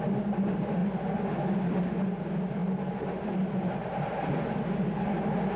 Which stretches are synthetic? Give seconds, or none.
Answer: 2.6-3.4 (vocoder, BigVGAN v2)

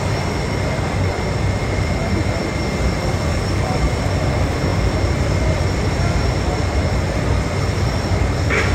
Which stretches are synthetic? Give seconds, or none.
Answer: 0.0-8.7 (vocoder, BigVGAN v2)

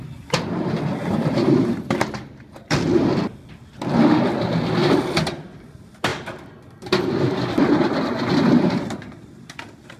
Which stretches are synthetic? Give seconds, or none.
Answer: 1.0-2.2 (vocoder, BigVGAN v2)

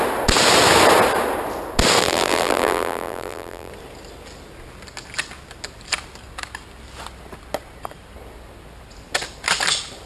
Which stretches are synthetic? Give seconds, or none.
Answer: 2.0-3.7 (vocoder, BigVGAN v2)

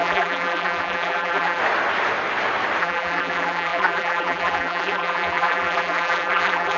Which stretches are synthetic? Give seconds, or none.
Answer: 0.0-1.6 (vocoder, BigVGAN v2); 2.8-6.8

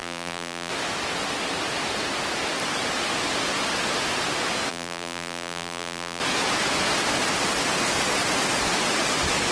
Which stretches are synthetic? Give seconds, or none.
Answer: 0.0-0.7 (vocoder, BigVGAN v2); 4.7-6.2

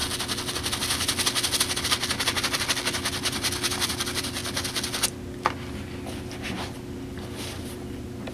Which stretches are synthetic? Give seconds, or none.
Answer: 1.8-4.4 (vocoder, BigVGAN v2)